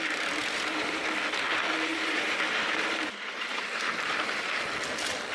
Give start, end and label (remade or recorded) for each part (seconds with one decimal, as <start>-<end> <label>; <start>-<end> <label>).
0.0-0.4 recorded; 0.4-1.0 remade; 1.0-1.9 recorded; 1.9-4.7 remade; 4.7-5.3 recorded